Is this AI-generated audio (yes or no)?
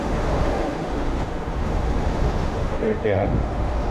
yes